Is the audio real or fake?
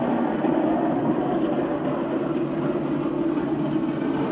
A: real